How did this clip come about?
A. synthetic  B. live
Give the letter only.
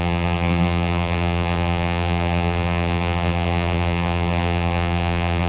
A